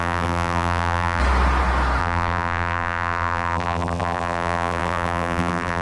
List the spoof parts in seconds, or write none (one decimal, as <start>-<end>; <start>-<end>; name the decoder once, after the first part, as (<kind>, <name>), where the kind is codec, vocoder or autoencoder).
0.0-1.2 (vocoder, BigVGAN v2); 2.0-5.8